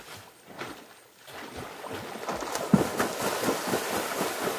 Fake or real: real